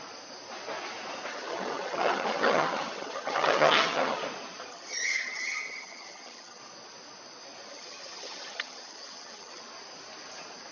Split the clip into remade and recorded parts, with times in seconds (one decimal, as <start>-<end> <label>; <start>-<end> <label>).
0.0-1.3 recorded; 1.3-4.2 remade; 4.2-4.7 recorded; 4.7-6.6 remade; 6.6-7.7 recorded; 7.7-9.6 remade; 9.6-10.7 recorded